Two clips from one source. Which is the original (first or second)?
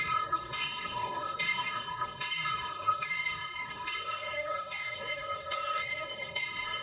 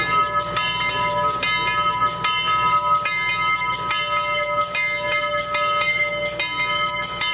second